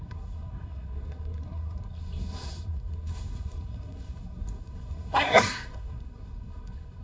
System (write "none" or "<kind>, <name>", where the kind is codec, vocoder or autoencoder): codec, SNAC